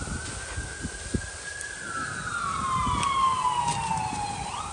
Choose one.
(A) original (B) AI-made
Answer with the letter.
A